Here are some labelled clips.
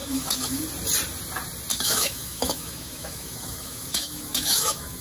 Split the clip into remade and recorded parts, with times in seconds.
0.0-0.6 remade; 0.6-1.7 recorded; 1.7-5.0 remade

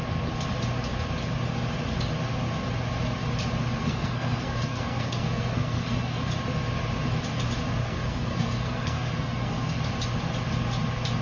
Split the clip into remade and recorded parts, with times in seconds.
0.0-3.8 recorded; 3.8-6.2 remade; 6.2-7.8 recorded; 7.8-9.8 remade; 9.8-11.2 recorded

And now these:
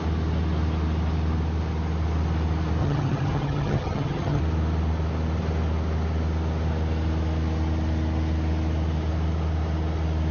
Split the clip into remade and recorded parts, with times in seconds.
0.0-2.8 recorded; 2.8-4.4 remade; 4.4-10.3 recorded

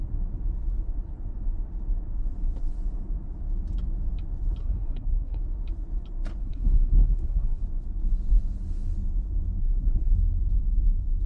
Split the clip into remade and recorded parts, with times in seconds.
0.0-4.6 recorded; 4.6-5.4 remade; 5.4-6.4 recorded; 6.4-7.6 remade; 7.6-9.6 recorded; 9.6-10.1 remade; 10.1-11.3 recorded

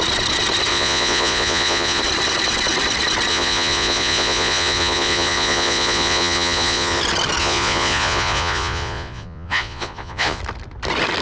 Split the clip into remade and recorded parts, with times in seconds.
0.0-0.7 recorded; 0.7-2.0 remade; 2.0-3.3 recorded; 3.3-7.0 remade; 7.0-7.4 recorded; 7.4-10.4 remade; 10.4-11.2 recorded

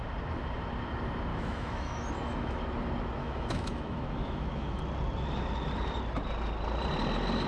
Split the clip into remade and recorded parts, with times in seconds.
0.0-1.3 recorded; 1.3-2.6 remade; 2.6-3.2 recorded; 3.2-4.8 remade; 4.8-7.5 recorded